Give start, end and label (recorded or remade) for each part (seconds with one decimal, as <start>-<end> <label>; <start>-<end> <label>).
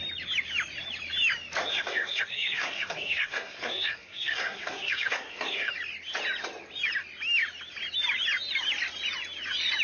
0.0-1.7 recorded; 1.7-5.7 remade; 5.7-9.8 recorded